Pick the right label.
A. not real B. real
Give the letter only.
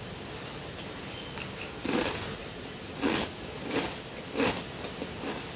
B